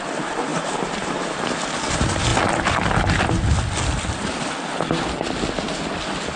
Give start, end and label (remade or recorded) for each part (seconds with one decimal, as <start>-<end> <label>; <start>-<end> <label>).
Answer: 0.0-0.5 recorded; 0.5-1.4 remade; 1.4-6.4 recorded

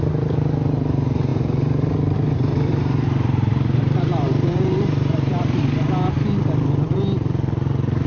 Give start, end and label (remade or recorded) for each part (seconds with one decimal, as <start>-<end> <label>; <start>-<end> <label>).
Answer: 0.0-1.3 recorded; 1.3-5.6 remade; 5.6-8.1 recorded

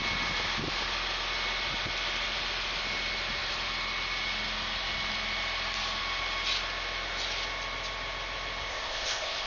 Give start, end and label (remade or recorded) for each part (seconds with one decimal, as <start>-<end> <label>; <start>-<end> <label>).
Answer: 0.0-8.7 recorded; 8.7-9.5 remade

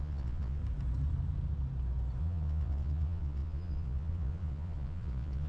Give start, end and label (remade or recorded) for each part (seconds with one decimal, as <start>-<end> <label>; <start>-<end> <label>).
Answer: 0.0-0.6 remade; 0.6-2.2 recorded; 2.2-5.5 remade

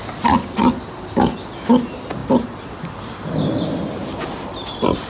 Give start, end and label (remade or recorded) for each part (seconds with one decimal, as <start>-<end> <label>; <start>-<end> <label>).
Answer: 0.0-5.1 recorded